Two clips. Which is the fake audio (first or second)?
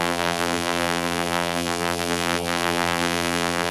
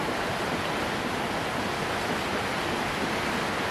first